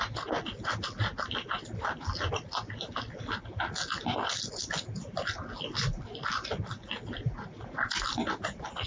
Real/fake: real